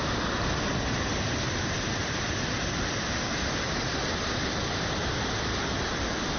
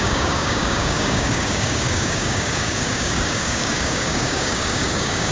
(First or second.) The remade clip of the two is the second